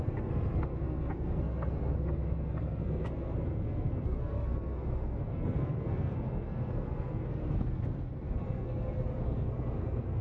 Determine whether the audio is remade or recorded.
remade